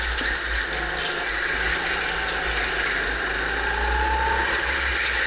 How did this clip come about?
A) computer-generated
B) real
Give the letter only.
B